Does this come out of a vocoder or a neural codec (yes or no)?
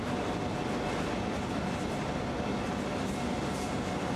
no